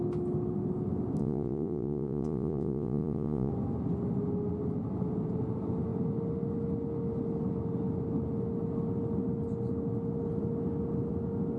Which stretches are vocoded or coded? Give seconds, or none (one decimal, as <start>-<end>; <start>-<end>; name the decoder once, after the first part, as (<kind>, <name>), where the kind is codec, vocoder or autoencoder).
1.2-3.5 (vocoder, Vocos)